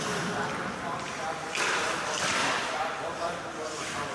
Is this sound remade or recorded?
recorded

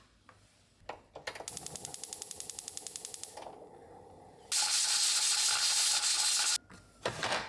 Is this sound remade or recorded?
recorded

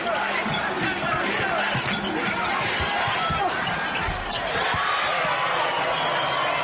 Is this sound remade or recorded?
recorded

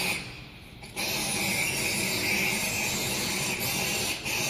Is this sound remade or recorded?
recorded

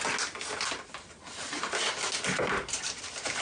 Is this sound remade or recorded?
recorded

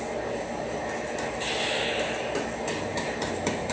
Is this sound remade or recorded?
recorded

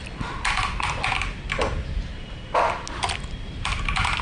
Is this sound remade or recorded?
recorded